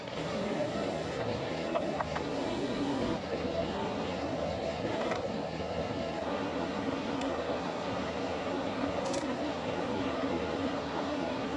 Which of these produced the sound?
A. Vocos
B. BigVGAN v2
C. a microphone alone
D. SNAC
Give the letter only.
D